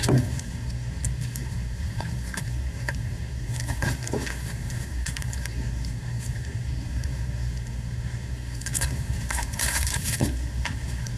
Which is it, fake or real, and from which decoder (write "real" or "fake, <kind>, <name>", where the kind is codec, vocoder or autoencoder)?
fake, codec, SNAC